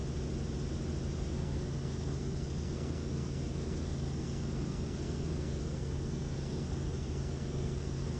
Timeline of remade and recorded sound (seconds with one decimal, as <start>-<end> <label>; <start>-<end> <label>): 0.0-1.1 recorded; 1.1-8.2 remade